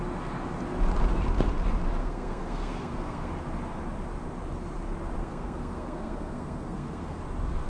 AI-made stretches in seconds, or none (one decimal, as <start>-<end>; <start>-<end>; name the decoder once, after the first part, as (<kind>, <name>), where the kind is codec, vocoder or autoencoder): 2.0-3.3 (codec, SNAC); 5.2-7.2